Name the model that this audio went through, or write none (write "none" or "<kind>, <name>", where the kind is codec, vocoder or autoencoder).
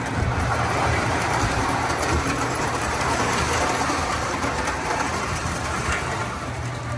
vocoder, BigVGAN v2